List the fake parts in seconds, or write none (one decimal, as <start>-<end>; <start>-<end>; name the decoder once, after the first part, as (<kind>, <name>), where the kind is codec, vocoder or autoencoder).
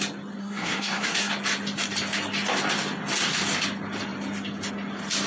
0.4-1.3 (codec, SNAC)